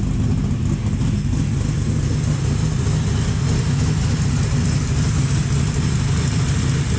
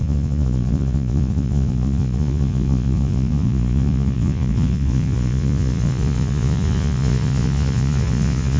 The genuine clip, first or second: first